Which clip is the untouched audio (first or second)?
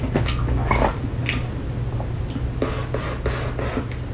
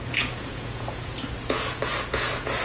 first